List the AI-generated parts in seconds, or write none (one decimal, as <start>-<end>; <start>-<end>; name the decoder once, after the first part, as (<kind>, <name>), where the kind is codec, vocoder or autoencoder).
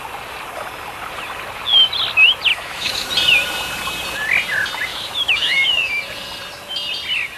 2.5-3.1 (autoencoder, DAC-VAE); 4.9-6.0